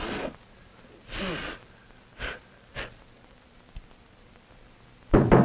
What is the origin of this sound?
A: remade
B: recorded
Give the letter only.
B